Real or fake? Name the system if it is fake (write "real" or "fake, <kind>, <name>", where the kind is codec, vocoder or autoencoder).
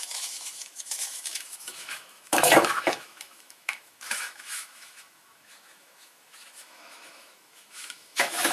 fake, autoencoder, DAC-VAE